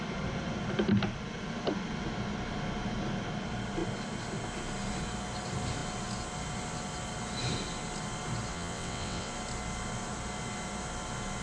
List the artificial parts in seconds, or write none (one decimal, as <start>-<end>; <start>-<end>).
8.5-9.3